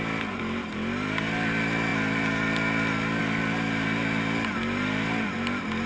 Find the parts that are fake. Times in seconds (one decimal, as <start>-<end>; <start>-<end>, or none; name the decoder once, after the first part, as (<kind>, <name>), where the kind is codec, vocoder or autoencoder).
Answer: none